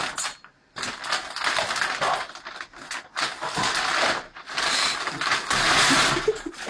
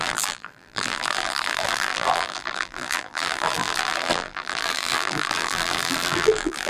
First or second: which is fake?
second